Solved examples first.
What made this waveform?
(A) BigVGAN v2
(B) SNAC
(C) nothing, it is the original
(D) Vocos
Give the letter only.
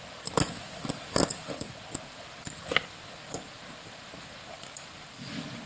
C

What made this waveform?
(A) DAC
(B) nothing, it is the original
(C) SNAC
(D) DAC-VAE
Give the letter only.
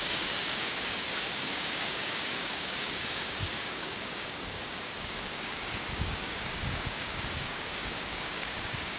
A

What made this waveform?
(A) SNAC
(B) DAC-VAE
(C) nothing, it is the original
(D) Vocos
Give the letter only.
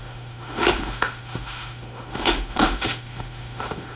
B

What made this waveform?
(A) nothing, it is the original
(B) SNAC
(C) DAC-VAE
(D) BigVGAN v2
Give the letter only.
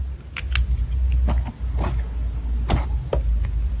A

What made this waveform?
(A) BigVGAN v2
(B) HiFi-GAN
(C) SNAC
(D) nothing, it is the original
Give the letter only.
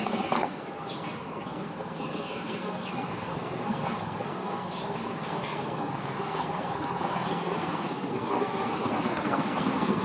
C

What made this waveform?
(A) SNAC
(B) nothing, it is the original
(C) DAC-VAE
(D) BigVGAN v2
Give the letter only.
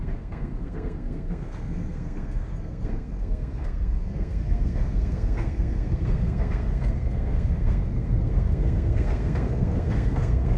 A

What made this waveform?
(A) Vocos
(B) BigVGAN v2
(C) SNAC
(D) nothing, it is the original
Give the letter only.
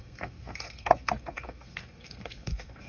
C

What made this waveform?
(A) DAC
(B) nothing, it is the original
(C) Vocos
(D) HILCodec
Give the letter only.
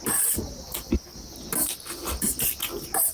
B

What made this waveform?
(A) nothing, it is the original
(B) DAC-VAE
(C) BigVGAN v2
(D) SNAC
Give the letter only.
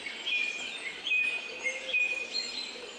A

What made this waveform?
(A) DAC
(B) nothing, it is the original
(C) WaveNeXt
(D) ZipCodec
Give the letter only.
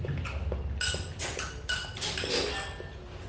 B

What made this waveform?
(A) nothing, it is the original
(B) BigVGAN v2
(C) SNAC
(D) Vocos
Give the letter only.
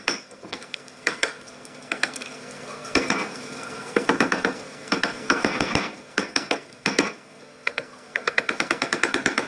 C